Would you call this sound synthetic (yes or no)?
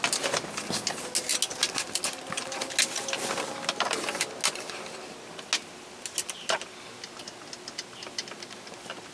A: no